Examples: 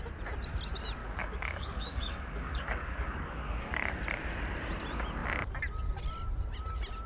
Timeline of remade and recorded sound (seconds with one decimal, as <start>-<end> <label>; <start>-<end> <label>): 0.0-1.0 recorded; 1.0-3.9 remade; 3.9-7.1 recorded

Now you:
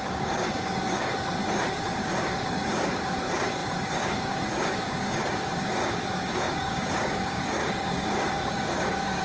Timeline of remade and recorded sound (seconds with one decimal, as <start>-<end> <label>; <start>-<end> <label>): 0.0-1.1 remade; 1.1-1.7 recorded; 1.7-9.2 remade

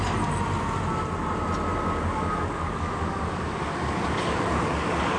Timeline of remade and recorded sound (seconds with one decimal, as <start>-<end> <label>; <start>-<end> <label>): 0.0-1.8 recorded; 1.8-5.2 remade

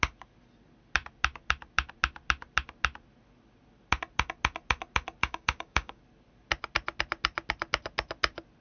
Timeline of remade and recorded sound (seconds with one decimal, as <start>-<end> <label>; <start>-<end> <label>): 0.0-5.2 recorded; 5.2-6.0 remade; 6.0-8.6 recorded

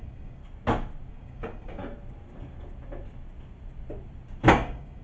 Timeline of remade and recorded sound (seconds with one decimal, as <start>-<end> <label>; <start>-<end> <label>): 0.0-0.4 remade; 0.4-1.1 recorded; 1.1-1.8 remade; 1.8-4.5 recorded; 4.5-5.0 remade